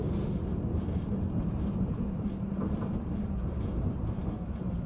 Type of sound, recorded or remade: remade